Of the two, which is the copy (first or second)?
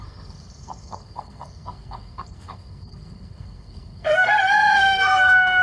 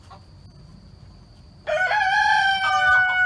first